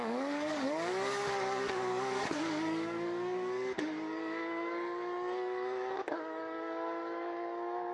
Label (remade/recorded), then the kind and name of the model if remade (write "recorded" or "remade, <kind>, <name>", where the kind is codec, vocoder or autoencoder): remade, codec, DAC